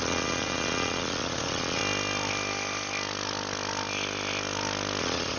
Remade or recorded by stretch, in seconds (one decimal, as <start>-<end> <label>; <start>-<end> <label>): 0.0-1.8 remade; 1.8-5.0 recorded; 5.0-5.4 remade